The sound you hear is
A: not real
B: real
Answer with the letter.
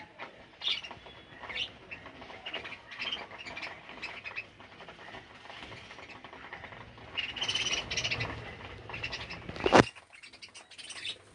B